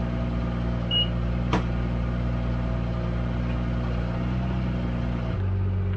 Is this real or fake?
real